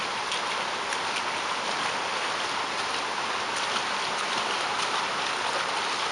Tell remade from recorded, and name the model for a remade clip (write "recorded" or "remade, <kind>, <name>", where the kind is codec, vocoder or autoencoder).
recorded